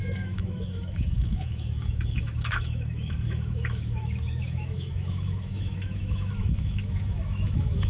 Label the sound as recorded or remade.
remade